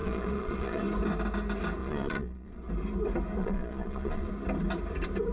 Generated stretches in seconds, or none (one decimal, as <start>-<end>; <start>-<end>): 0.0-0.8; 1.8-2.7; 3.4-4.3